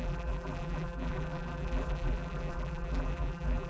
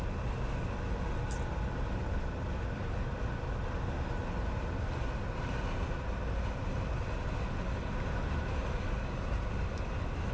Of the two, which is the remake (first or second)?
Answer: first